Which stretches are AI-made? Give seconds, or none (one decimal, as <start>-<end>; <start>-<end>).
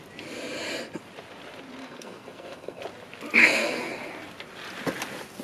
1.8-2.8; 3.4-4.1